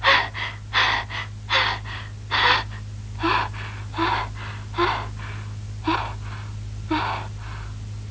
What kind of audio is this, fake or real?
real